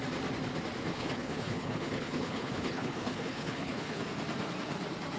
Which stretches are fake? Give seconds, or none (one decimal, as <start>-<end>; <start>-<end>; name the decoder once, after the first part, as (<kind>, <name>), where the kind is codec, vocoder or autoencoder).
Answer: 0.9-4.0 (codec, HILCodec)